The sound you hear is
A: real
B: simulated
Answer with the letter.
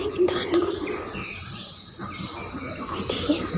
A